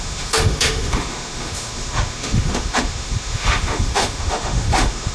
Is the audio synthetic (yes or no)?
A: yes